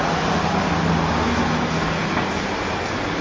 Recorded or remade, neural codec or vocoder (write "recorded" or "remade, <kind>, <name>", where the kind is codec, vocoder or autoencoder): recorded